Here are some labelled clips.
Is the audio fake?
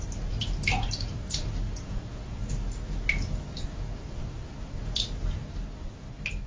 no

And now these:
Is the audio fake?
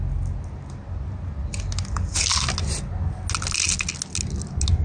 no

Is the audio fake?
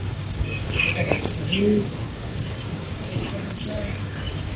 yes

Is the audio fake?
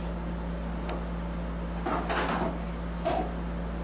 no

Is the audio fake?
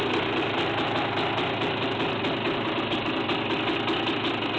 no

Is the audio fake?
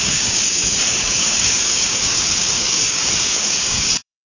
yes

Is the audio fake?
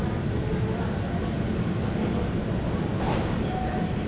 no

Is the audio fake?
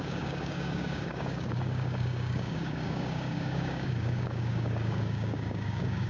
yes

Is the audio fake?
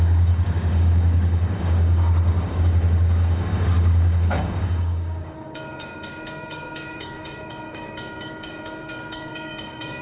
yes